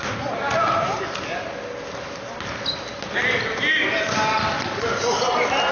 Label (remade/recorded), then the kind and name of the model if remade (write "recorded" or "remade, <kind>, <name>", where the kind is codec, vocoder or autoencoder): recorded